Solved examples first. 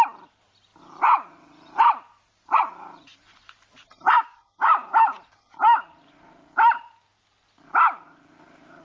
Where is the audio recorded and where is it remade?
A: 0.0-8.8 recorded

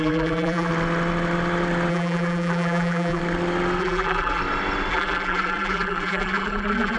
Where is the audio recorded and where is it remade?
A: 0.0-0.7 remade; 0.7-1.9 recorded; 1.9-3.2 remade; 3.2-3.8 recorded; 3.8-4.4 remade; 4.4-4.9 recorded; 4.9-7.0 remade

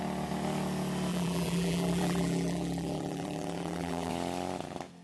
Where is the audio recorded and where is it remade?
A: 0.0-1.1 recorded; 1.1-4.1 remade; 4.1-5.0 recorded

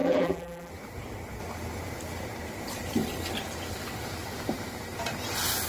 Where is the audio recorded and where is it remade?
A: 0.0-0.7 remade; 0.7-5.7 recorded

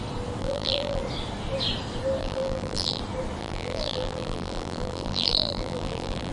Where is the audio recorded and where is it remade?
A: 0.0-0.4 recorded; 0.4-1.0 remade; 1.0-2.2 recorded; 2.2-3.0 remade; 3.0-3.4 recorded; 3.4-6.3 remade